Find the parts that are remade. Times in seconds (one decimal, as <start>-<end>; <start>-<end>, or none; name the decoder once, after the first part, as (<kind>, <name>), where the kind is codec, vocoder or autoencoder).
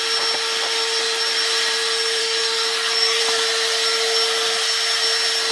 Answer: 2.2-3.2 (codec, DAC)